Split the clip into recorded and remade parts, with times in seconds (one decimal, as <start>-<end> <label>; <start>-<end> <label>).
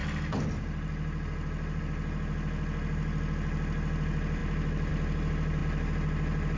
0.0-1.8 remade; 1.8-4.4 recorded; 4.4-4.9 remade; 4.9-5.6 recorded; 5.6-6.6 remade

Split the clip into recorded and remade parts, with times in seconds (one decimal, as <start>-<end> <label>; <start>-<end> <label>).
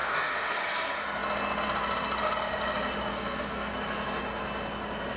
0.0-0.5 remade; 0.5-3.1 recorded; 3.1-3.7 remade; 3.7-5.2 recorded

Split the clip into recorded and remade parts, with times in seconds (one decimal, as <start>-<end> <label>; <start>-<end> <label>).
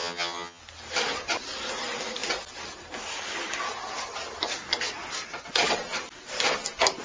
0.0-0.6 remade; 0.6-7.0 recorded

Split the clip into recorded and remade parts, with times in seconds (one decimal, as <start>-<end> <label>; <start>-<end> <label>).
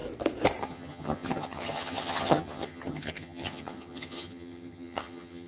0.0-0.6 recorded; 0.6-5.5 remade